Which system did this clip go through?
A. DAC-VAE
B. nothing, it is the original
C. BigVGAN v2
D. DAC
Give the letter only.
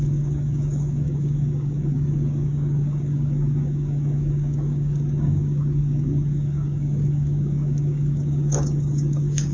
D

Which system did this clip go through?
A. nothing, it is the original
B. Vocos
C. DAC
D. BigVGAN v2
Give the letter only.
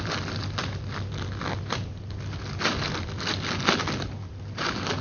A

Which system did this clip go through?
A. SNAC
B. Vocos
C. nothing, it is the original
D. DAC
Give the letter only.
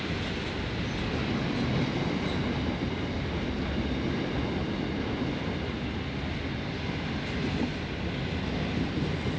C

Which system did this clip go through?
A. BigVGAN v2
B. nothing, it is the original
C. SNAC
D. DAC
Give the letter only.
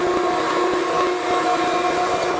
B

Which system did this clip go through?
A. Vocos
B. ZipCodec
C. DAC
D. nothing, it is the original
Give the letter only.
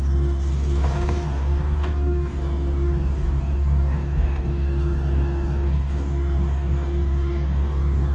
C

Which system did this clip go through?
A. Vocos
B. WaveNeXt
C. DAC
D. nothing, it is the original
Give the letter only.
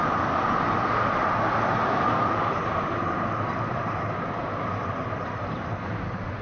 D